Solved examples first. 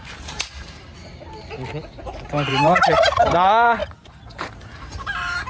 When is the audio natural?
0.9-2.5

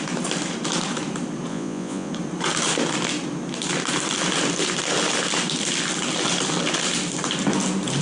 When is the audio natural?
0.0-1.5; 2.1-8.0

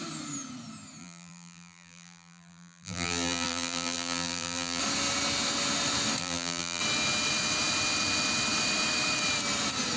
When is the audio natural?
0.0-1.0; 4.8-6.2; 6.8-10.0

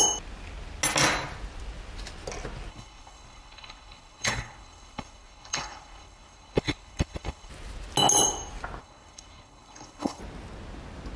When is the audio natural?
0.0-2.7; 7.5-8.8; 10.2-11.2

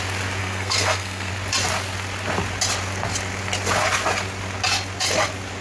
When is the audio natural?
0.0-0.4; 1.3-5.6

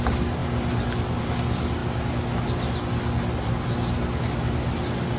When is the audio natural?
0.0-5.2

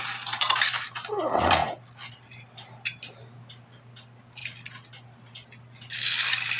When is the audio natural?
1.6-2.1; 4.4-5.3

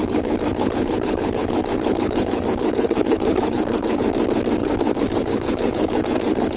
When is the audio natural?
4.0-4.6